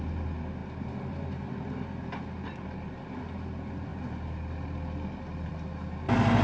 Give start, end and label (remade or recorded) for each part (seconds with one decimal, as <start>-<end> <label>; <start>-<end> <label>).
0.0-6.4 recorded